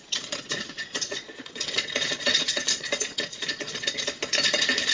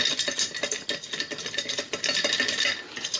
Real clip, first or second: second